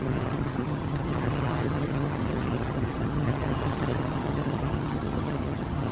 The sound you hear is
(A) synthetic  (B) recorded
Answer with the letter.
A